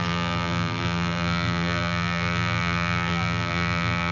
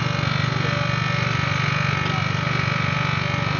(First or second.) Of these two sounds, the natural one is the second